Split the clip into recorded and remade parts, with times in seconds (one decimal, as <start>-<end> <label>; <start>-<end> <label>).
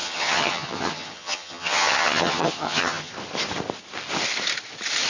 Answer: 0.0-3.1 remade; 3.1-5.1 recorded